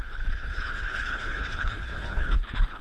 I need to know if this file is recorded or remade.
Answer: remade